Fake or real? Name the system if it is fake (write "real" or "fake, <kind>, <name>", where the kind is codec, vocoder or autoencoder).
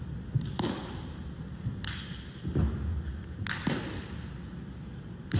real